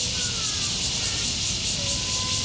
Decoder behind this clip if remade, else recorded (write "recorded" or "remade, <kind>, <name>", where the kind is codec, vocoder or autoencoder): recorded